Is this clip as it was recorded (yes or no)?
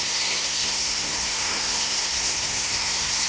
no